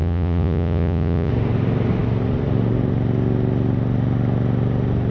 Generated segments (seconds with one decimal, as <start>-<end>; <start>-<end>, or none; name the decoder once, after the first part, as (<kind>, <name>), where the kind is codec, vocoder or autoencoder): 0.0-1.3 (vocoder, Vocos)